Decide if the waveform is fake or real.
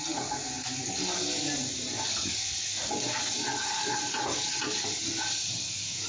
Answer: real